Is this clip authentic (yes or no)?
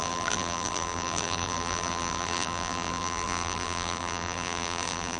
no